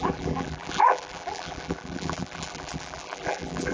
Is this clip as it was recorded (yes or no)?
no